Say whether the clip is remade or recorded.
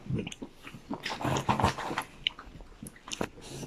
recorded